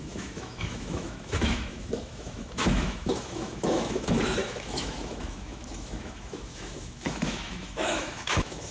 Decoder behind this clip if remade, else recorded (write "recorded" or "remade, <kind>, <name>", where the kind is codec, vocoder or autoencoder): remade, autoencoder, DAC-VAE